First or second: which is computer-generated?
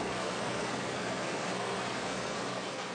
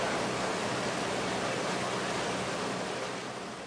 first